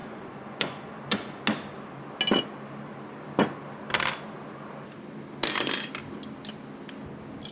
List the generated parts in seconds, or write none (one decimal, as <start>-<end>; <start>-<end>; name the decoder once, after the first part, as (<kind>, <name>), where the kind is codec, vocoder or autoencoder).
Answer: 0.0-1.4 (vocoder, Vocos)